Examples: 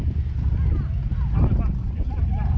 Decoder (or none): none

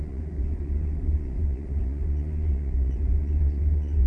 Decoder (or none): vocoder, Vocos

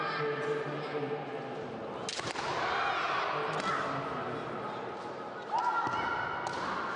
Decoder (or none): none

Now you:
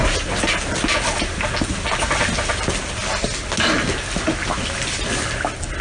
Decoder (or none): none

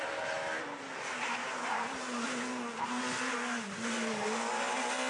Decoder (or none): none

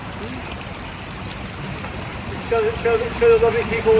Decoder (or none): none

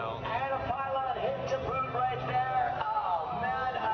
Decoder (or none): none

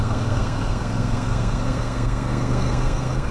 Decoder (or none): codec, SNAC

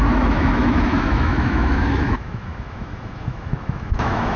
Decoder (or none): autoencoder, DAC-VAE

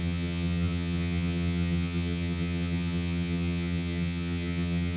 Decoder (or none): vocoder, HiFi-GAN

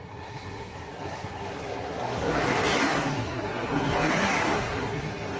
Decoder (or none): codec, SNAC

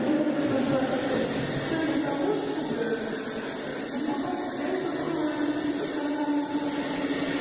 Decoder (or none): none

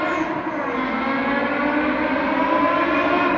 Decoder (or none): none